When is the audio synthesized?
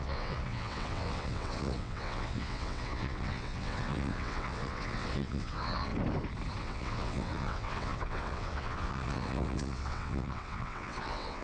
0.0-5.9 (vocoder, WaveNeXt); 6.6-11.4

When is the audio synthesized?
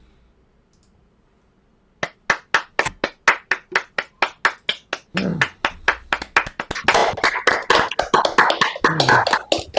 none